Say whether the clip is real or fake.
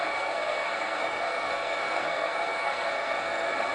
fake